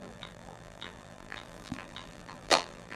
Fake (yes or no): yes